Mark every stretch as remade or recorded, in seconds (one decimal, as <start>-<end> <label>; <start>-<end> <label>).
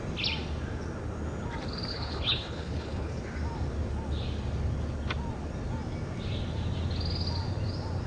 0.0-1.9 recorded; 1.9-3.2 remade; 3.2-8.1 recorded